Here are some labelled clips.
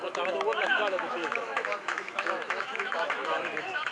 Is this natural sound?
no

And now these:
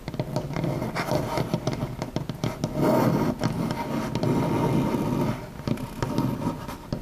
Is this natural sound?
yes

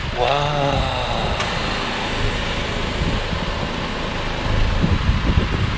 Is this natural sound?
yes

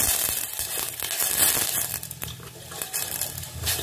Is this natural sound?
yes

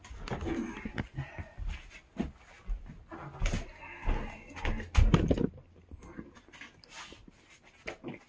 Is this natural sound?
yes